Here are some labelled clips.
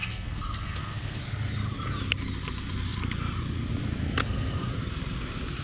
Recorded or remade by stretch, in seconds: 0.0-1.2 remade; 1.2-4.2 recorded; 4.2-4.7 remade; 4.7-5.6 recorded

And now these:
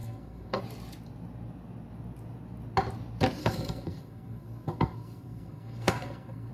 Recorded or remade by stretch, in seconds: 0.0-0.6 remade; 0.6-3.4 recorded; 3.4-6.5 remade

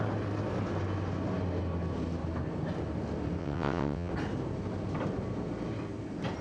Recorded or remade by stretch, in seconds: 0.0-3.4 recorded; 3.4-4.1 remade; 4.1-6.4 recorded